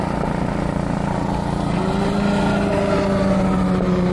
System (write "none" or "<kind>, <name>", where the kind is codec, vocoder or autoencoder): none